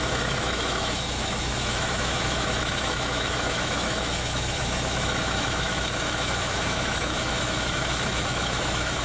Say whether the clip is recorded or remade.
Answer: remade